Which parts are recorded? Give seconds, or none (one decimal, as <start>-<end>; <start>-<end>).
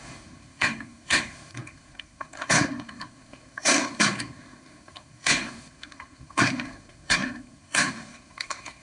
none